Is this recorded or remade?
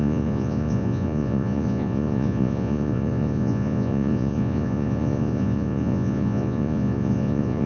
remade